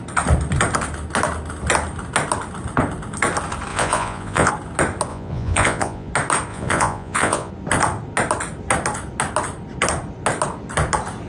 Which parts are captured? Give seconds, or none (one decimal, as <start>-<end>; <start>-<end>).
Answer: 0.0-3.7; 4.5-5.1; 6.1-6.5; 7.5-11.3